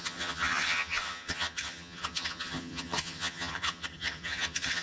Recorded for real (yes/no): no